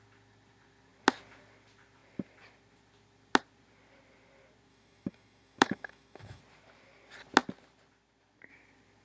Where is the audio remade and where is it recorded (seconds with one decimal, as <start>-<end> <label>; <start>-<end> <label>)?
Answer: 0.0-4.7 recorded; 4.7-6.4 remade; 6.4-9.0 recorded